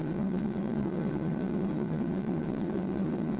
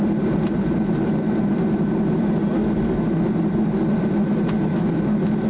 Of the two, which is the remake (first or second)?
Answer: first